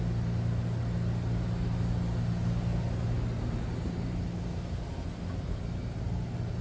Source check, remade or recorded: recorded